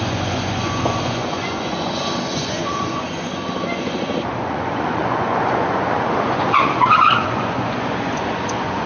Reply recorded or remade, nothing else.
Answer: remade